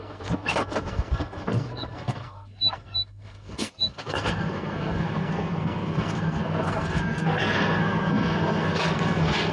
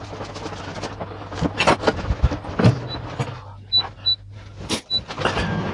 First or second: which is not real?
first